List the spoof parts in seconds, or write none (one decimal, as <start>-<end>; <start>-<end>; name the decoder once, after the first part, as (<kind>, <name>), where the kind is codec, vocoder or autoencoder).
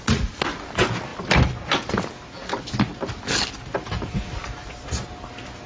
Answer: none